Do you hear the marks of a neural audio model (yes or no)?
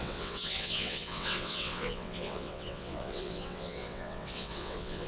yes